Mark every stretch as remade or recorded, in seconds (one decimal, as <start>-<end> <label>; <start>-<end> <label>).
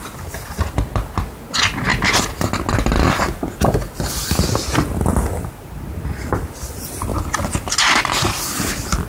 0.0-9.1 recorded